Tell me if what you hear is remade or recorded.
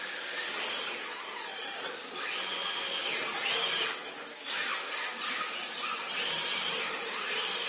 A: recorded